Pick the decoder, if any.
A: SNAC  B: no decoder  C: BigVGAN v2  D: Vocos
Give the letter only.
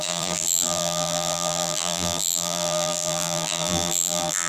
C